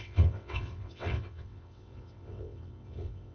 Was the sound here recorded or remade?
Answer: remade